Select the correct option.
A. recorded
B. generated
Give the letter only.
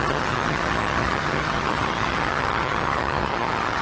B